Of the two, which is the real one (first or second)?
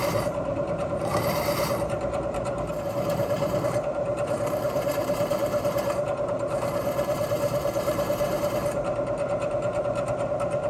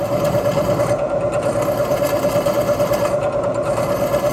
second